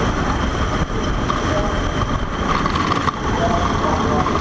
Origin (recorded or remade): recorded